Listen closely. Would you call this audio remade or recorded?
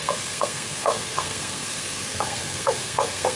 remade